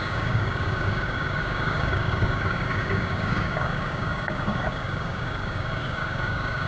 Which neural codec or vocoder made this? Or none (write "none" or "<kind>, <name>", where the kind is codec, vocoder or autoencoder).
codec, DAC